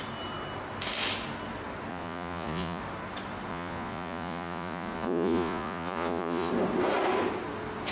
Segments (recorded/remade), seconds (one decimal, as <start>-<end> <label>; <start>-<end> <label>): 0.0-1.9 recorded; 1.9-2.8 remade; 2.8-3.5 recorded; 3.5-6.5 remade; 6.5-7.9 recorded